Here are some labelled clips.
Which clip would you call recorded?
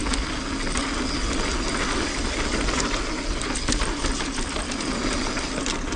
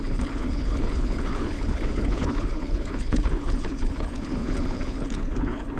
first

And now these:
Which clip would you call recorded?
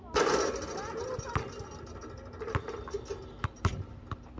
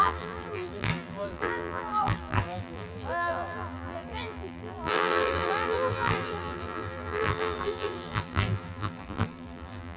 first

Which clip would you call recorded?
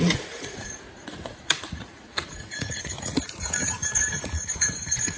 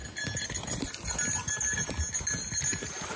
second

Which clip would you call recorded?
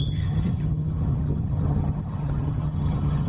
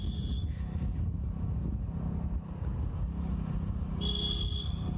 second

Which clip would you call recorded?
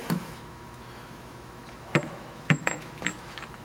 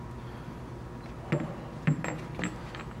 second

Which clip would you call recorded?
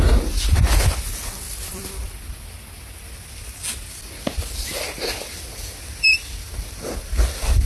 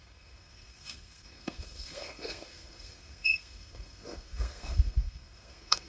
first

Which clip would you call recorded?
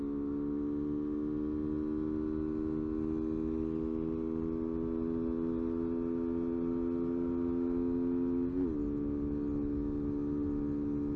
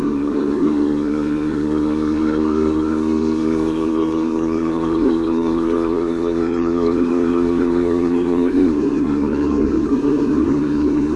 first